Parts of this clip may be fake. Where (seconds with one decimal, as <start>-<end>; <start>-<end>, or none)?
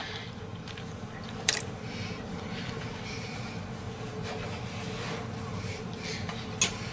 0.5-3.4